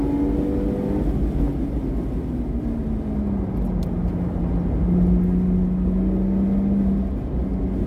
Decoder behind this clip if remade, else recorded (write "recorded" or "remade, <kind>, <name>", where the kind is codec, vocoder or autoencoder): recorded